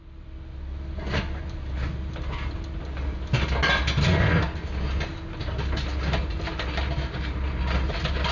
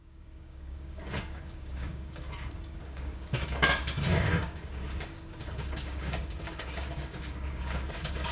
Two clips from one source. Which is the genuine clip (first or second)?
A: first